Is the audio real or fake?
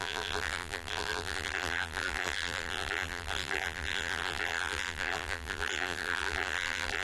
fake